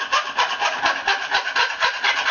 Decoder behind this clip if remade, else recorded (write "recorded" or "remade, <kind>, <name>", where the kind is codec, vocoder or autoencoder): recorded